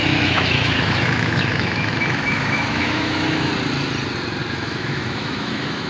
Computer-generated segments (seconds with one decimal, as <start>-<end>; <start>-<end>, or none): 0.0-3.5; 4.5-5.9